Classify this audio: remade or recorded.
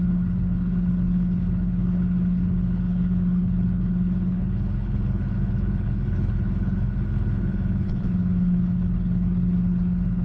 remade